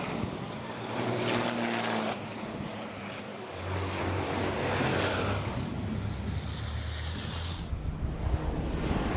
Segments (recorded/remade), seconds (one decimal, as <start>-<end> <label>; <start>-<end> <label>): 0.0-3.3 recorded; 3.3-4.0 remade; 4.0-4.9 recorded; 4.9-5.7 remade; 5.7-9.2 recorded